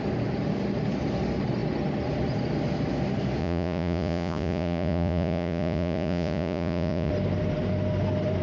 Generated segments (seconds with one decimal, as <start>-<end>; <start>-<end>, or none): 3.4-7.1